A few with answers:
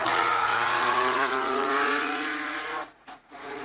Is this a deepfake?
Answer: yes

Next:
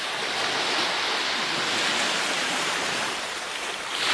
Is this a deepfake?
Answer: no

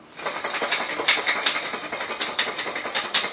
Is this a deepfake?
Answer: no